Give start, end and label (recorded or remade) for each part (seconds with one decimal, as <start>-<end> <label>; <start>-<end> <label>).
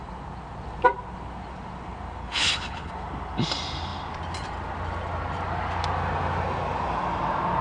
0.0-2.2 recorded; 2.2-2.9 remade; 2.9-7.6 recorded